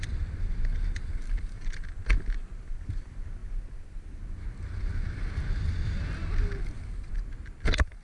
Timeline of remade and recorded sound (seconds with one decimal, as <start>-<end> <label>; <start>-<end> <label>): 0.0-8.0 recorded